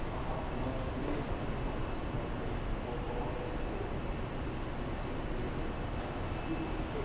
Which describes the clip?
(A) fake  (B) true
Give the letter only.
B